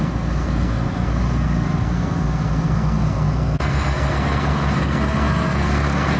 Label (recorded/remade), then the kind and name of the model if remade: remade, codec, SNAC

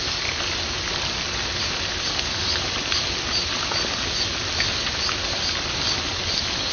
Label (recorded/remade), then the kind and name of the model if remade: recorded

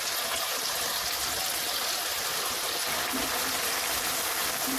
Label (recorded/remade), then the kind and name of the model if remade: recorded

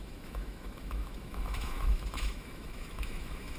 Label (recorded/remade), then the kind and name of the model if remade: remade, autoencoder, DAC-VAE